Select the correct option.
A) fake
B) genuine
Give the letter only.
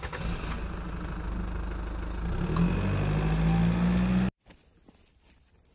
B